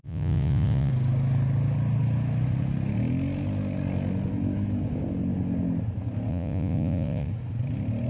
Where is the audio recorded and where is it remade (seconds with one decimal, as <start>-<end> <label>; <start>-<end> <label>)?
0.0-0.9 remade; 0.9-6.3 recorded; 6.3-7.3 remade; 7.3-8.1 recorded